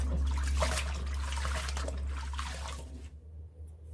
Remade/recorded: recorded